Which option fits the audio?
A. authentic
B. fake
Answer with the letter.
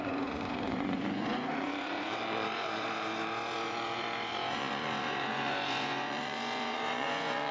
B